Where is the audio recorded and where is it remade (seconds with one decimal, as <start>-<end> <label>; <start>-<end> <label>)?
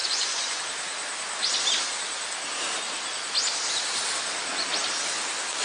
0.0-0.6 remade; 0.6-5.6 recorded